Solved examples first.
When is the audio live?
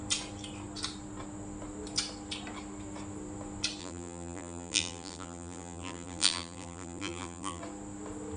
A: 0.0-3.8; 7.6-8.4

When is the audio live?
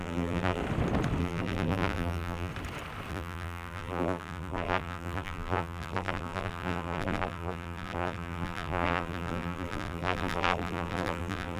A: 0.6-1.2; 2.5-3.1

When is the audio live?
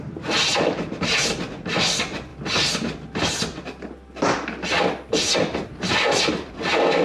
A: 0.0-0.5; 1.3-7.0